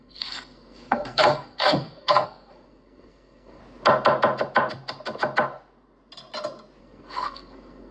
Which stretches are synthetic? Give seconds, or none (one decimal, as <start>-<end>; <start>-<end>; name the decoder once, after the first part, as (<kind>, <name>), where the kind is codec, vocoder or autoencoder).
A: 0.0-3.6 (codec, SNAC); 6.8-7.9